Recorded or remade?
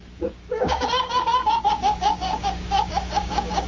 remade